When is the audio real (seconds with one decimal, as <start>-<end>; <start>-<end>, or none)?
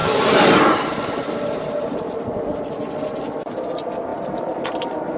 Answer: 2.2-4.1